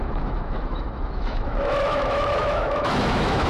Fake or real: fake